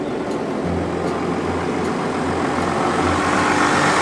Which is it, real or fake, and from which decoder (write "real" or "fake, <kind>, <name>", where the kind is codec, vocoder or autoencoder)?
real